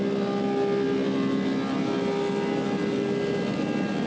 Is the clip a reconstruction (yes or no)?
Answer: no